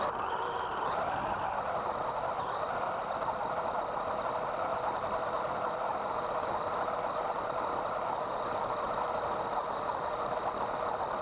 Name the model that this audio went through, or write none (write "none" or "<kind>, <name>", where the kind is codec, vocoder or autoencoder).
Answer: none